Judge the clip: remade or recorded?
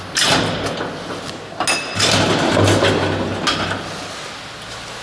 recorded